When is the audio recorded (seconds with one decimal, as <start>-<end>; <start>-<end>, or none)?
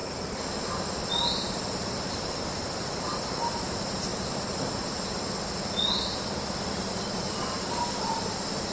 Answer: 0.0-8.7